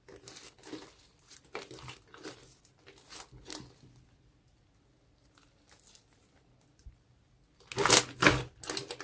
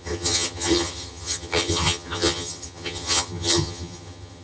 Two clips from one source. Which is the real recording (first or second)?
first